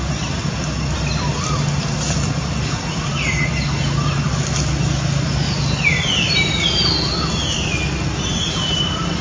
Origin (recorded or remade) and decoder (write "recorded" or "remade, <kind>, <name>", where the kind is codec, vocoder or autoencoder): recorded